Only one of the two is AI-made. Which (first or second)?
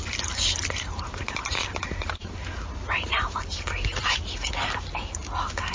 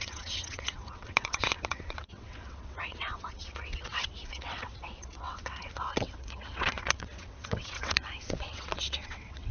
second